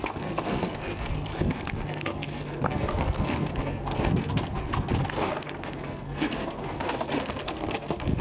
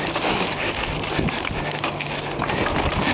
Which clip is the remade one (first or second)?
first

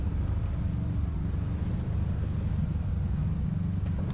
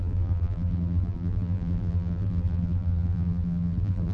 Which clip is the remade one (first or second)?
second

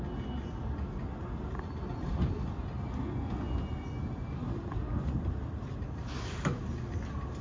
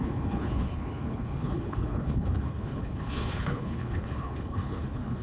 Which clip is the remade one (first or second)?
second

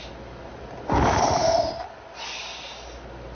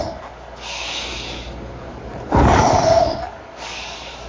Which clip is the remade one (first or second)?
second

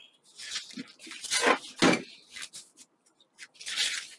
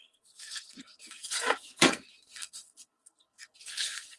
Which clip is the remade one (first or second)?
second